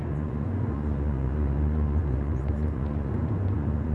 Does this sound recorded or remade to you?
remade